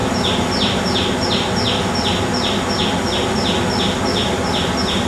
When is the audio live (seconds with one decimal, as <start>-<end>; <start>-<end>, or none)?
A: 0.0-5.1